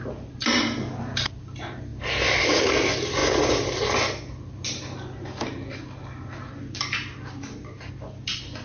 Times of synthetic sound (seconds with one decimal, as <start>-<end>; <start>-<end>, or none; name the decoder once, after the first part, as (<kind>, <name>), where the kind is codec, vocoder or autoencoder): none